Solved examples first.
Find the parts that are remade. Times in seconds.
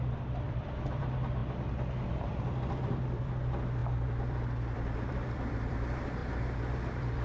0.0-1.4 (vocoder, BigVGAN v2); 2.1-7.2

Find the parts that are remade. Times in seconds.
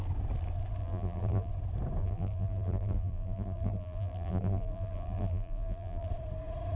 0.8-1.5 (vocoder, BigVGAN v2); 2.0-6.1